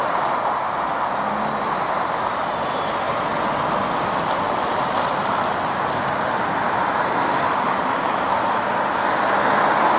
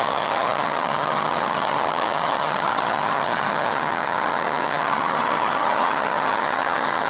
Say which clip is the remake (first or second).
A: second